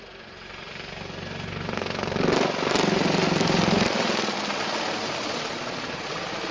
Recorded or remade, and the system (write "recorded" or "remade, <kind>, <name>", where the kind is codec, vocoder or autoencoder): recorded